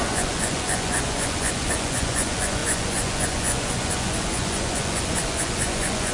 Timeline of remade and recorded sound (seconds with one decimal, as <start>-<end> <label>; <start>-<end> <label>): 0.0-6.1 remade